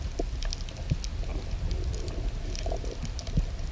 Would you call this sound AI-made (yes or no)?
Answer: no